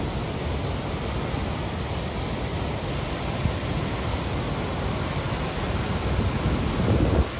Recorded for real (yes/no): yes